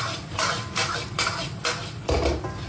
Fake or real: real